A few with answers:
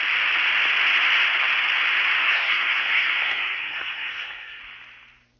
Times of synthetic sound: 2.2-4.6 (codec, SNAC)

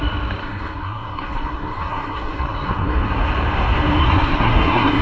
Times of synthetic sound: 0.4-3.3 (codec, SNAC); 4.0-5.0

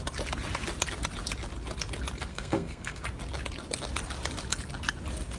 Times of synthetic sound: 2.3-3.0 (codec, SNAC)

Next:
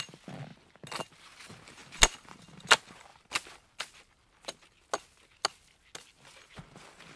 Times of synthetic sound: none